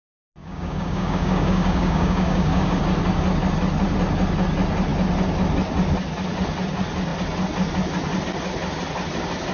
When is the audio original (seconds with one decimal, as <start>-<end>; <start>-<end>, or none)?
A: 0.0-0.4; 2.8-9.5